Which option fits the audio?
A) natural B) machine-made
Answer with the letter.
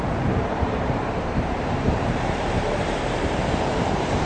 B